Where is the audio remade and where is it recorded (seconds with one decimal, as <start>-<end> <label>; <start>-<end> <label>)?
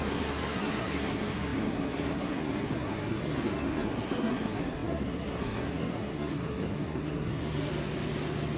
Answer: 0.0-7.7 remade; 7.7-8.6 recorded